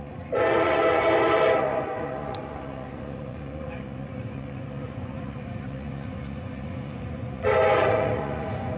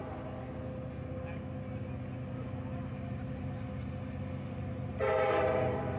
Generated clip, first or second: first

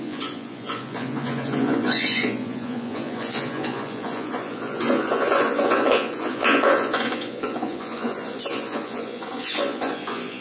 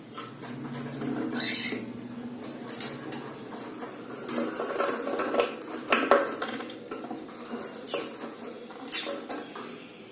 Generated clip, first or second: first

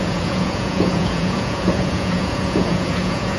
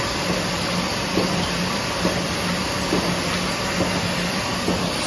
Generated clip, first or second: first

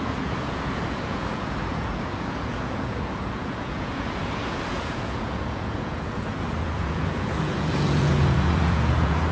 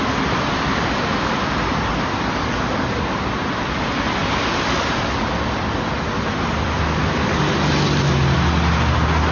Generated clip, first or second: first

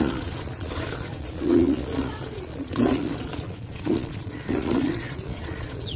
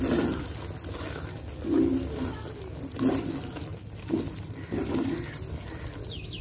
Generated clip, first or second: first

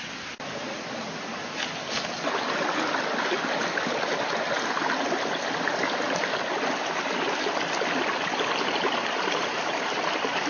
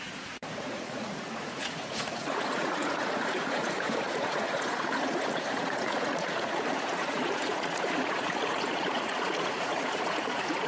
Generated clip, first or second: second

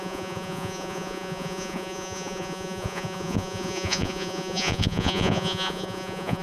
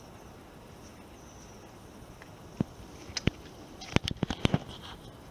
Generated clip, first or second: first